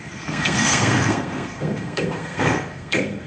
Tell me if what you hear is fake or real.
fake